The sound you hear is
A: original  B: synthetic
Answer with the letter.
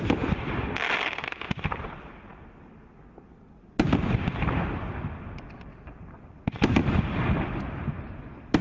A